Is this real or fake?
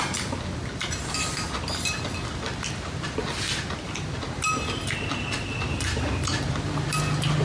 real